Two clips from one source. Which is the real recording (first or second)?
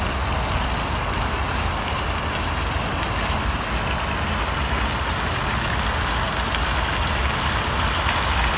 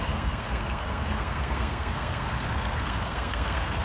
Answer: first